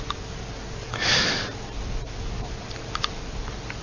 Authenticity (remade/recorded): recorded